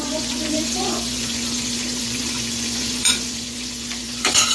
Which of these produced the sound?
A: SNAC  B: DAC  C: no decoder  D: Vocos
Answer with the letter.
D